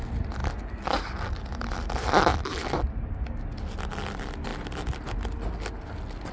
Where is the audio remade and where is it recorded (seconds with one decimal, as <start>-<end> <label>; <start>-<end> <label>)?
0.0-0.4 remade; 0.4-1.5 recorded; 1.5-2.3 remade; 2.3-3.8 recorded; 3.8-4.5 remade; 4.5-6.3 recorded